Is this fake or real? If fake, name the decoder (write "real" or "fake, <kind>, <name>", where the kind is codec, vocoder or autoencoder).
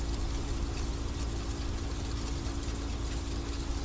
real